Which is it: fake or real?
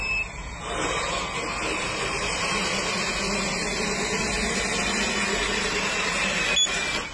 real